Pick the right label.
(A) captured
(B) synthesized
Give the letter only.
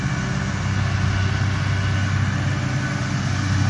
A